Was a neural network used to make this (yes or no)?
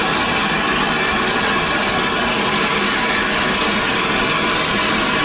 no